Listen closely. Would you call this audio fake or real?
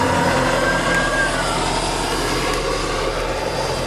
real